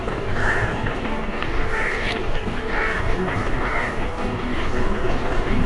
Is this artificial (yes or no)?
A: yes